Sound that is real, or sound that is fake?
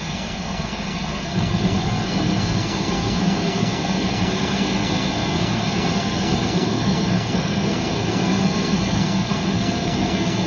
fake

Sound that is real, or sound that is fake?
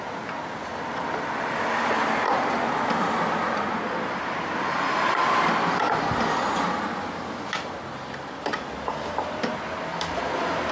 real